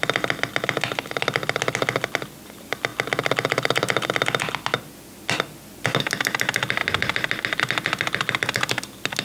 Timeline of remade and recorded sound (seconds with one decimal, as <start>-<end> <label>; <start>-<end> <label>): 0.0-9.2 recorded